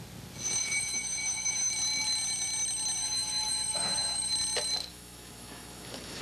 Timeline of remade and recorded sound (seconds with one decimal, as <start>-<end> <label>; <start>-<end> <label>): 0.0-0.6 recorded; 0.6-1.7 remade; 1.7-3.0 recorded; 3.0-4.3 remade; 4.3-4.9 recorded; 4.9-6.2 remade